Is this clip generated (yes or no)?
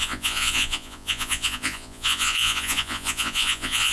yes